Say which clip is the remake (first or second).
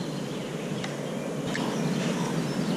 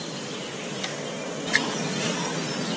second